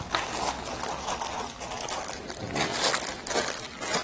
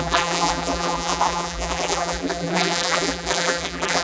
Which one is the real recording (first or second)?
first